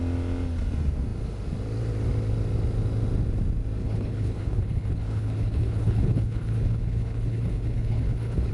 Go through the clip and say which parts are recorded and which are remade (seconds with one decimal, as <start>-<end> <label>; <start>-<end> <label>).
0.0-3.8 recorded; 3.8-8.5 remade